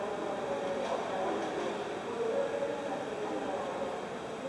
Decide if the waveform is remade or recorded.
recorded